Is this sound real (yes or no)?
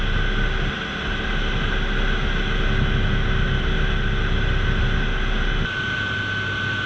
yes